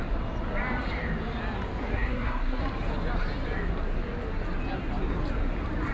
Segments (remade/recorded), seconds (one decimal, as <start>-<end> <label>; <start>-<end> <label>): 0.0-1.8 recorded; 1.8-2.6 remade; 2.6-5.9 recorded